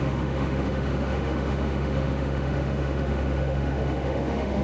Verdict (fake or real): fake